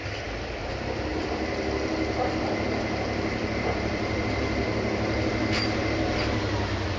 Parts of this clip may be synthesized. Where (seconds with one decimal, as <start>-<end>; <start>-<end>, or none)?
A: 1.1-5.3